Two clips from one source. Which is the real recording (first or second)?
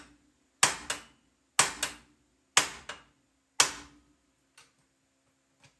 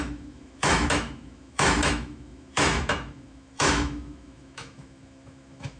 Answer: first